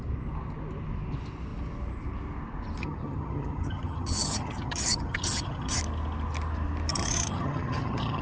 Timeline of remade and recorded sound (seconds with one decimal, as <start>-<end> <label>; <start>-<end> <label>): 0.0-2.8 recorded; 2.8-5.8 remade; 5.8-6.9 recorded; 6.9-8.2 remade